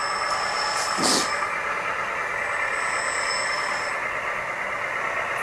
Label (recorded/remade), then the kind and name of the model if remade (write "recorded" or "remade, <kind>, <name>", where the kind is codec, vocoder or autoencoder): recorded